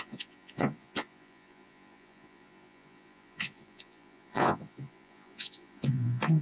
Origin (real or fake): fake